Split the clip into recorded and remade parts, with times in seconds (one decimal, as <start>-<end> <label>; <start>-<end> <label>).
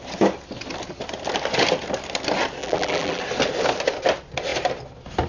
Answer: 0.0-2.6 recorded; 2.6-3.2 remade; 3.2-5.3 recorded